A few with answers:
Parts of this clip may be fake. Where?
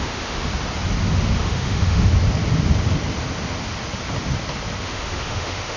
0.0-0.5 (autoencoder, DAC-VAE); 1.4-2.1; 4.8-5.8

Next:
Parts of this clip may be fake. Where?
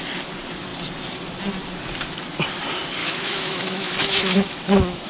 3.0-5.1 (autoencoder, DAC-VAE)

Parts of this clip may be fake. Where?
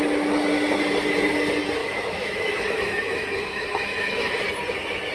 1.8-4.4 (autoencoder, DAC-VAE)